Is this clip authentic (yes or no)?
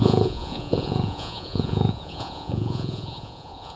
no